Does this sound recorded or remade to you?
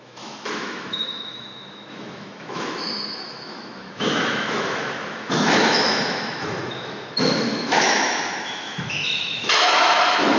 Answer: remade